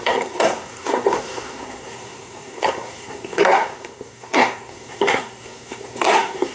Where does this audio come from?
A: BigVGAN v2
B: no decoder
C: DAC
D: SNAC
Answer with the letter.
D